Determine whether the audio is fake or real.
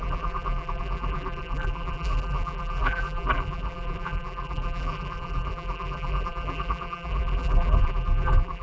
fake